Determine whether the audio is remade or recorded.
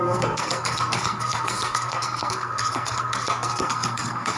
remade